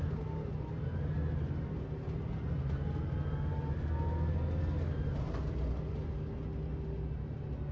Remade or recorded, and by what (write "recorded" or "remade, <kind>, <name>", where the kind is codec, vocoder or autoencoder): recorded